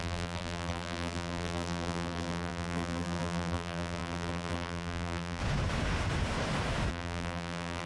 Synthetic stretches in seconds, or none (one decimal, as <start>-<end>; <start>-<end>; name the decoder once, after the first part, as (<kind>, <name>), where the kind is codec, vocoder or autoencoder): 0.0-5.4 (vocoder, BigVGAN v2); 6.9-7.9